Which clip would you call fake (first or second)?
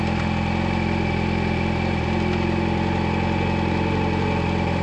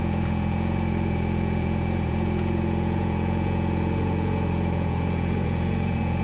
second